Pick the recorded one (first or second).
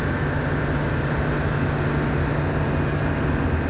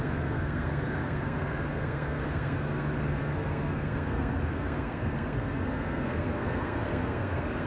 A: first